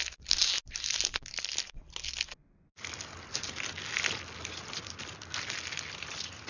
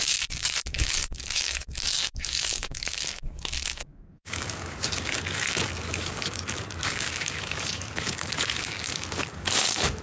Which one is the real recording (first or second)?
first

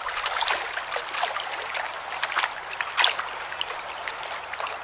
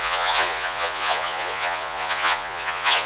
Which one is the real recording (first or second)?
first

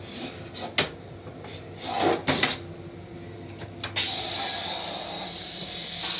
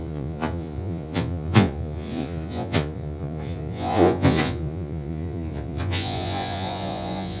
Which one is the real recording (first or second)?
first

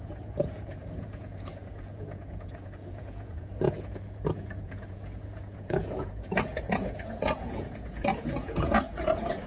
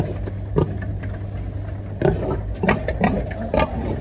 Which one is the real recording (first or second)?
second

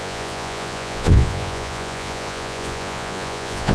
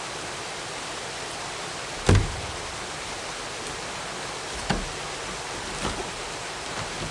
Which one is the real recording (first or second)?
second